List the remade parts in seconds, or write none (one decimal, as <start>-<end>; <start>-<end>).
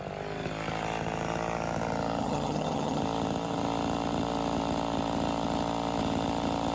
2.2-3.0